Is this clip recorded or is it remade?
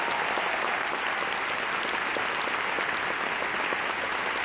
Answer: recorded